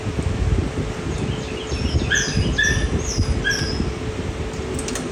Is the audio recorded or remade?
recorded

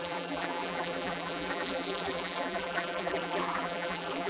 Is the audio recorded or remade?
remade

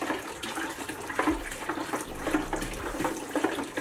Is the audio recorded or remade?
remade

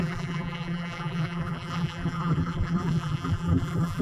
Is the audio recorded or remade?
remade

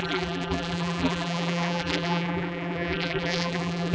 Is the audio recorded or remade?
remade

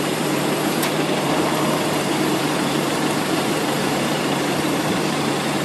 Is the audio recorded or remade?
remade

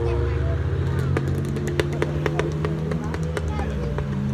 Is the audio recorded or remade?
recorded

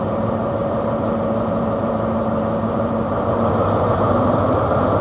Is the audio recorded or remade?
remade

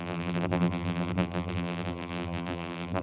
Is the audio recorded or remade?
remade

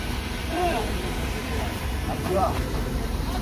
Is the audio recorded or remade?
remade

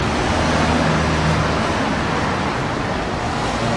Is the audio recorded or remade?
recorded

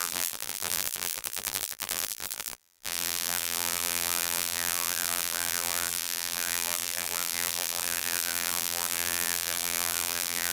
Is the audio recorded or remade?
remade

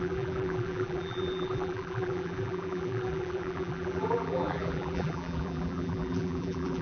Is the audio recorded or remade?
remade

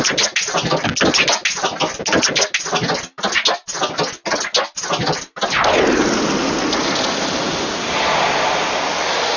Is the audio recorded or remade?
recorded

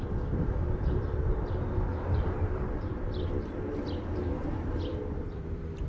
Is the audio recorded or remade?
remade